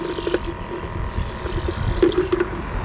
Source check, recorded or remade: recorded